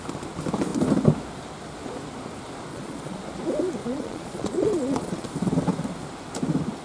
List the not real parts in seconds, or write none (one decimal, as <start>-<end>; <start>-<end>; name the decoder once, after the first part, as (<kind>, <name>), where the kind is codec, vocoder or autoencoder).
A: 2.7-3.2 (vocoder, Vocos); 3.8-5.3